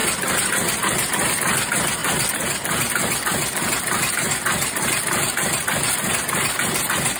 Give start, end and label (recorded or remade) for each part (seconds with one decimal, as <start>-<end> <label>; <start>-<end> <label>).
0.0-1.3 remade; 1.3-2.0 recorded; 2.0-4.3 remade; 4.3-7.2 recorded